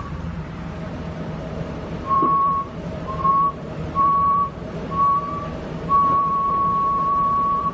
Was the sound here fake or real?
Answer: fake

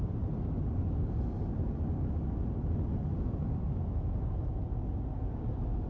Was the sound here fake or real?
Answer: real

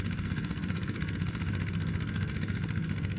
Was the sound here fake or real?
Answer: fake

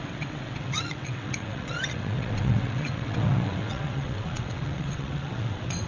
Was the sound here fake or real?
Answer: fake